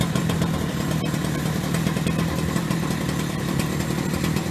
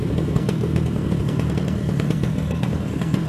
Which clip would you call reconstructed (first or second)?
second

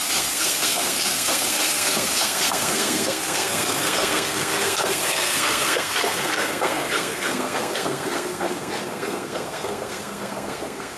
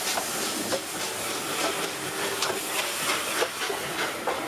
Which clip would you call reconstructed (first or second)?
first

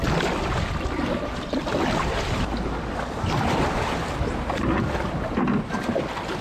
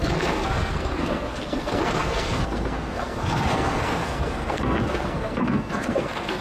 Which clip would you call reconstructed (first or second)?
second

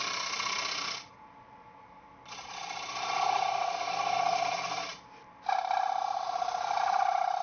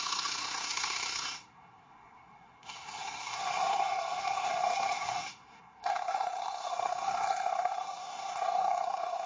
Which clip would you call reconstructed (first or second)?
second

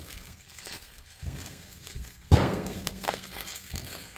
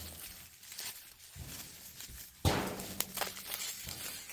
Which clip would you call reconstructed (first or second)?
first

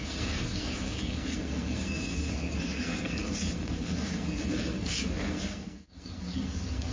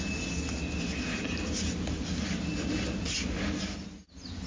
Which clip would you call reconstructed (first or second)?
first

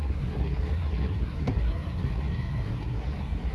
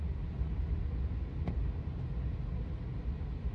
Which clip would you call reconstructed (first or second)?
first